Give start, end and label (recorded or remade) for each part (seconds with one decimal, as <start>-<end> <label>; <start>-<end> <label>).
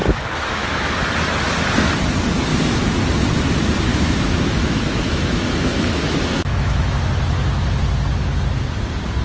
0.0-0.9 remade; 0.9-3.9 recorded; 3.9-6.9 remade; 6.9-9.2 recorded